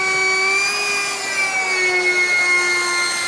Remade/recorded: recorded